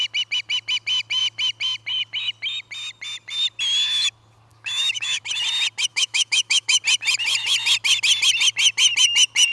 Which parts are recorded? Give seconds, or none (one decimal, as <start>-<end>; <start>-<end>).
0.0-4.5; 5.2-5.9; 6.8-9.5